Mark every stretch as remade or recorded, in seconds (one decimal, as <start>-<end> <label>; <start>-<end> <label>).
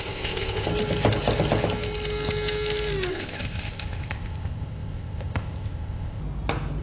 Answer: 0.0-0.7 remade; 0.7-3.1 recorded; 3.1-6.2 remade; 6.2-6.8 recorded